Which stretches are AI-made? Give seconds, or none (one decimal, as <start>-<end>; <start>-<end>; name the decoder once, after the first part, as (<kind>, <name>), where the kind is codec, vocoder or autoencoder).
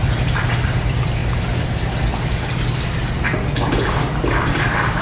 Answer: 0.0-1.2 (vocoder, BigVGAN v2); 4.2-5.0